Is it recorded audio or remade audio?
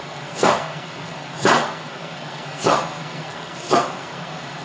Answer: remade